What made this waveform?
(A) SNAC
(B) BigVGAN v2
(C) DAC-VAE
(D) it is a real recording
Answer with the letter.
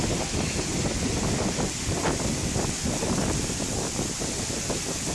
D